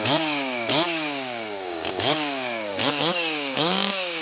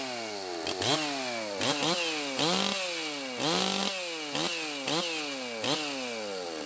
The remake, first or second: first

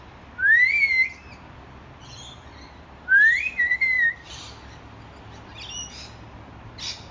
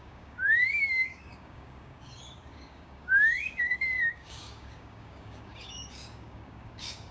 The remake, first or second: second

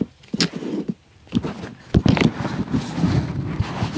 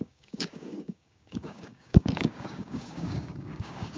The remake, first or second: second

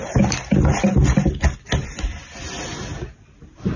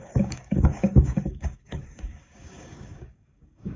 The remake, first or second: second